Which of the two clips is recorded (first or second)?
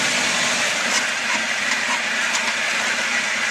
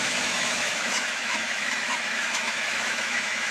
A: first